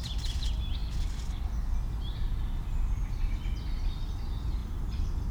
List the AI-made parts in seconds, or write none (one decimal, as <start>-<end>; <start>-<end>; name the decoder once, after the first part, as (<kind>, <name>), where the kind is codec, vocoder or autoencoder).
none